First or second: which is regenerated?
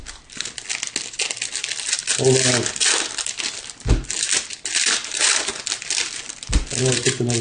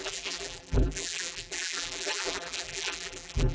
second